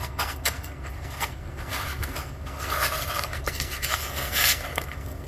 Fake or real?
fake